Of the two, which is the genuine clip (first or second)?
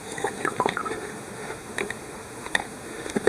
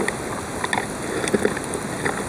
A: second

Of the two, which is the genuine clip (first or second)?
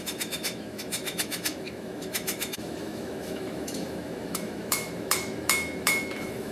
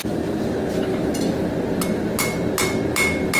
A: second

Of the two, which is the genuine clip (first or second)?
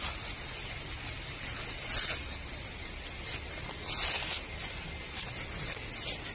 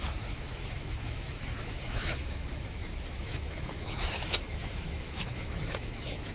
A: first